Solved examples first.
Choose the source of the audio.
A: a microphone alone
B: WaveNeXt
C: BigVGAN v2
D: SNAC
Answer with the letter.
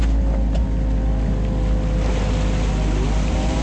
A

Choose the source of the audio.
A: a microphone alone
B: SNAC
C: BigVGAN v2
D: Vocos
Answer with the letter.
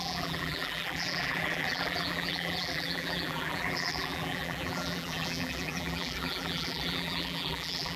C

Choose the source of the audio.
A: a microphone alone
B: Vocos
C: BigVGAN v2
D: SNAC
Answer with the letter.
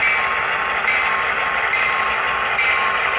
A